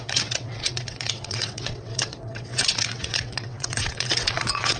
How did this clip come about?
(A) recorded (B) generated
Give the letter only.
B